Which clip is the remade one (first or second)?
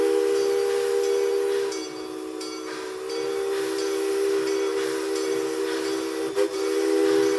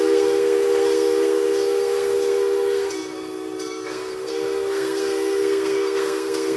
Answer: second